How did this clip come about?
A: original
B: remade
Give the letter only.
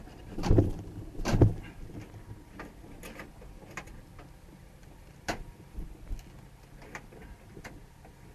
A